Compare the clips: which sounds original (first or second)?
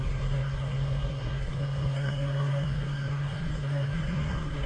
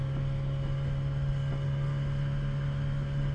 second